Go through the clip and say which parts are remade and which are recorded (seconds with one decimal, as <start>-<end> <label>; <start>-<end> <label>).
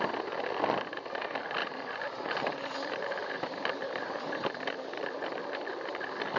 0.0-1.6 recorded; 1.6-5.4 remade; 5.4-6.4 recorded